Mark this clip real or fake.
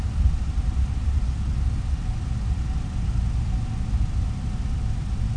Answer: real